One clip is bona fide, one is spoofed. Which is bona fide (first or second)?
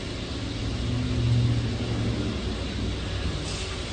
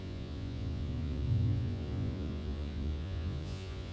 first